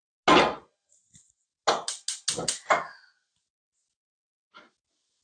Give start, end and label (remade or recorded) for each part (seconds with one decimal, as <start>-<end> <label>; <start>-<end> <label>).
0.0-5.2 recorded